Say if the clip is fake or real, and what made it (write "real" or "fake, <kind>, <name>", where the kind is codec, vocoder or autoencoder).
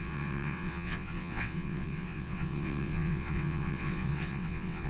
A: fake, vocoder, WaveNeXt